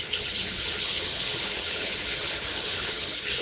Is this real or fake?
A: fake